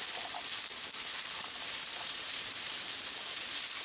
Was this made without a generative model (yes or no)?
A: no